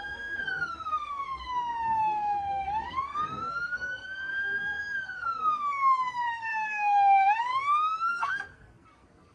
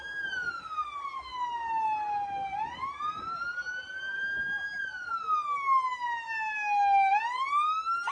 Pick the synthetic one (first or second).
first